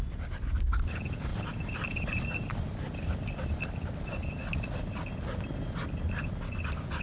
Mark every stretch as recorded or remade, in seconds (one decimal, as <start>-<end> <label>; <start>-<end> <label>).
0.0-7.0 recorded